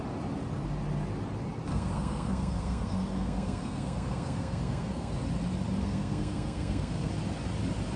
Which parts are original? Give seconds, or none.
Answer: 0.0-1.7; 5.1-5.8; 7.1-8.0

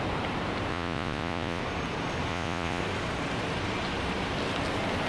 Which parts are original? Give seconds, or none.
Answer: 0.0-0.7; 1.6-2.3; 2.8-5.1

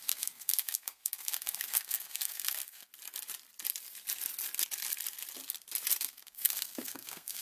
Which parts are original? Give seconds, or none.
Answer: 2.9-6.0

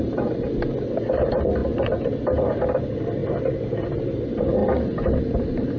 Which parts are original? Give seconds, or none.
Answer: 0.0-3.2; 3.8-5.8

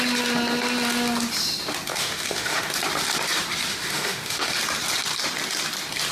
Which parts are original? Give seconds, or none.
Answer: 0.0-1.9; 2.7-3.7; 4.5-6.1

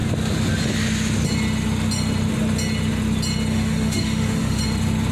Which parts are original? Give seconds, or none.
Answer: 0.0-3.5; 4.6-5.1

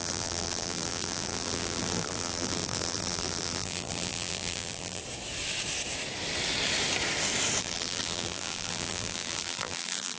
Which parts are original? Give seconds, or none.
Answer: 5.0-7.6